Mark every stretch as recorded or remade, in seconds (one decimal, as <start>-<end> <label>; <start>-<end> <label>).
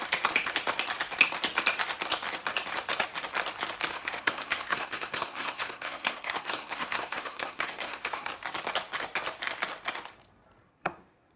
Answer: 0.0-3.9 recorded; 3.9-8.3 remade; 8.3-10.7 recorded; 10.7-11.4 remade